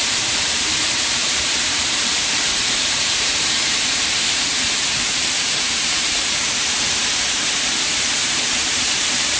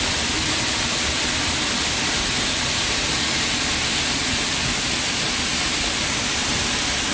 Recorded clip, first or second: second